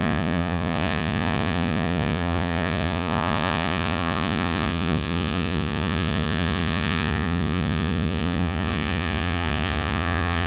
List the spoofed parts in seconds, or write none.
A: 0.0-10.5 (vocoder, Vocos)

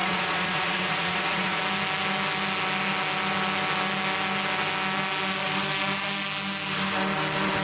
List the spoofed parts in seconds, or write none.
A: 0.0-1.6 (vocoder, Vocos)

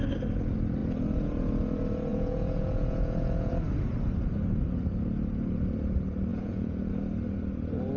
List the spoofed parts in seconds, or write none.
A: 2.1-3.5 (vocoder, Vocos); 6.3-6.9

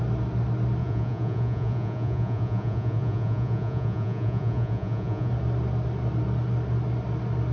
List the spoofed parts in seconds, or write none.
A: 0.8-5.3 (vocoder, Vocos)